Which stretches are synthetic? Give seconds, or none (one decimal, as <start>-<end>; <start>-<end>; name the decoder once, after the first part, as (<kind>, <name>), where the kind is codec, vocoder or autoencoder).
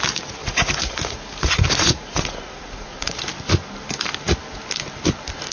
0.4-3.2 (vocoder, Vocos)